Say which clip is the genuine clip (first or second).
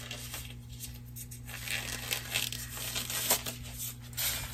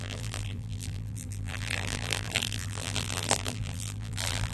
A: first